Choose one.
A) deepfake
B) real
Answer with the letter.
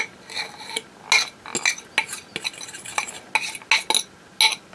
B